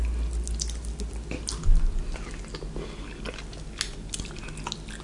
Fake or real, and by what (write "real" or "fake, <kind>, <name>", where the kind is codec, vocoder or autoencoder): real